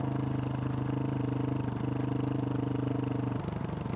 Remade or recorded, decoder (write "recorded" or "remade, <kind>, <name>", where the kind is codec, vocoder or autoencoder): recorded